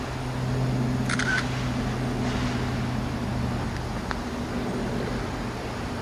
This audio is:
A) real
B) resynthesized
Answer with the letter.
A